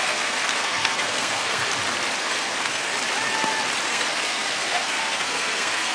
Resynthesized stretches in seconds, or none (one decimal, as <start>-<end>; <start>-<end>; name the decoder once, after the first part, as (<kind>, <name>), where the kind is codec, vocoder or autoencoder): 0.0-1.7 (codec, SNAC); 2.2-2.9; 3.9-5.9